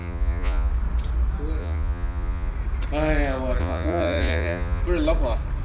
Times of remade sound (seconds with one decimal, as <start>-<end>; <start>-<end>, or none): 0.0-0.7; 1.6-2.5; 3.6-4.8